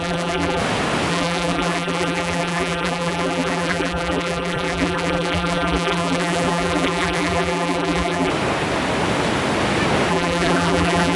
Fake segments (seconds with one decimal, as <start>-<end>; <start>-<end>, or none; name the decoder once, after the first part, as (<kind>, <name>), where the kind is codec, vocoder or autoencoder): 0.0-0.6 (vocoder, BigVGAN v2); 1.1-8.3; 10.1-11.2